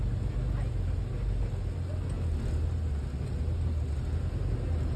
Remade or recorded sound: recorded